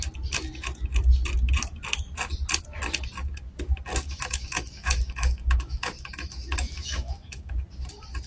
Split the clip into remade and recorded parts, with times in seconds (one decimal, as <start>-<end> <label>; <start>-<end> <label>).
0.0-3.9 recorded; 3.9-7.5 remade; 7.5-8.3 recorded